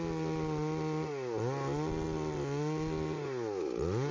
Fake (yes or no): no